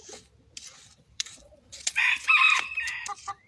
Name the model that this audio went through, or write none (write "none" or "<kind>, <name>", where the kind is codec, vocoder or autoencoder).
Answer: vocoder, BigVGAN v2